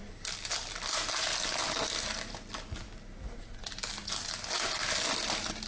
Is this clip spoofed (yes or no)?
no